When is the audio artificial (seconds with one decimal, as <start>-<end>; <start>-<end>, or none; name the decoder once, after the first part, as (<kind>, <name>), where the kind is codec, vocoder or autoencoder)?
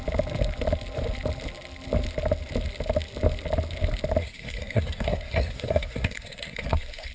4.2-7.1 (codec, SNAC)